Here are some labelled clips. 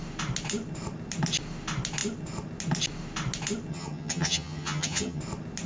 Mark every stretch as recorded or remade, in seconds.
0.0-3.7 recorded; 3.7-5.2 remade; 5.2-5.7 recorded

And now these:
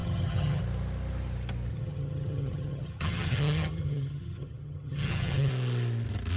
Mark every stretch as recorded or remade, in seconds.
0.0-0.6 remade; 0.6-1.7 recorded; 1.7-5.5 remade; 5.5-6.4 recorded